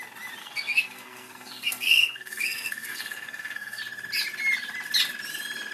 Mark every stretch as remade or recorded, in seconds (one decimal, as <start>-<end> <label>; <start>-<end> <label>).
0.0-0.4 recorded; 0.4-3.8 remade; 3.8-5.7 recorded

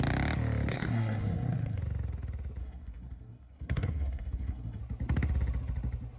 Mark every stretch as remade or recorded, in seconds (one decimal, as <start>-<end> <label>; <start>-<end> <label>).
0.0-0.7 recorded; 0.7-1.8 remade; 1.8-2.6 recorded; 2.6-4.8 remade; 4.8-6.2 recorded

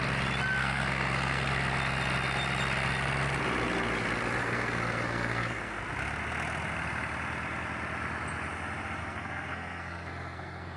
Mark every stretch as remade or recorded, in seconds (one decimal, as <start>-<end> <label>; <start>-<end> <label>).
0.0-0.6 recorded; 0.6-1.5 remade; 1.5-4.4 recorded; 4.4-5.8 remade; 5.8-9.0 recorded; 9.0-10.8 remade

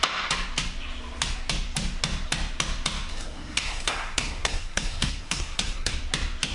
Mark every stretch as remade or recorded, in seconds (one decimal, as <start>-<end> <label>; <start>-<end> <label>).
0.0-3.1 recorded; 3.1-5.9 remade; 5.9-6.5 recorded

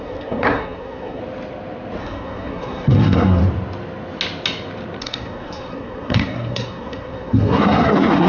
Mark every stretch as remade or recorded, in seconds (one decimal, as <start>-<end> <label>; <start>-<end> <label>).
0.0-1.2 remade; 1.2-2.0 recorded; 2.0-3.4 remade; 3.4-5.0 recorded; 5.0-8.3 remade

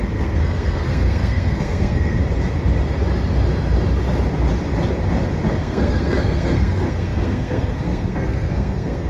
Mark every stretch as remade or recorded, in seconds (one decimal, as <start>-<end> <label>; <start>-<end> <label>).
0.0-2.2 remade; 2.2-5.6 recorded; 5.6-9.1 remade

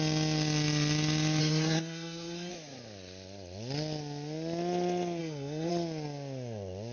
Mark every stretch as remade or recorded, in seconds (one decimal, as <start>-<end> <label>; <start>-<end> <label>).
0.0-1.4 recorded; 1.4-2.5 remade; 2.5-5.2 recorded; 5.2-5.7 remade; 5.7-6.9 recorded

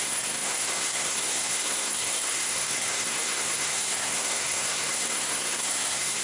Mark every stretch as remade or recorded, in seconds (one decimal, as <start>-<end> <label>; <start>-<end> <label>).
0.0-6.2 remade